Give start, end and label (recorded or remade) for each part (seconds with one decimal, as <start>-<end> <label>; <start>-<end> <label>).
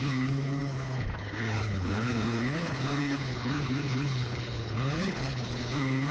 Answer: 0.0-6.1 remade